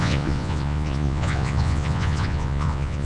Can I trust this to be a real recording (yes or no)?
no